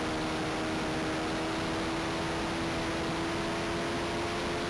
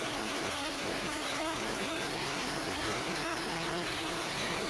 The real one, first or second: first